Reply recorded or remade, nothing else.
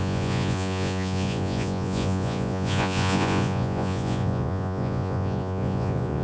remade